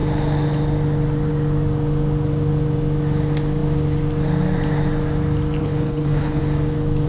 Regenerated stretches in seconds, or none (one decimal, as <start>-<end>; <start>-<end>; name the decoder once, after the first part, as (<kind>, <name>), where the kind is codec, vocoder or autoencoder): 5.6-6.4 (codec, HILCodec)